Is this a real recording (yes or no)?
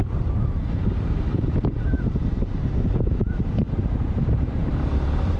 no